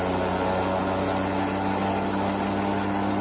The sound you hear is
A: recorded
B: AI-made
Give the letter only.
A